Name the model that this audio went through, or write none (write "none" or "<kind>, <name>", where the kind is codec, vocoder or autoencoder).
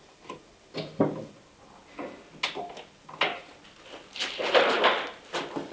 none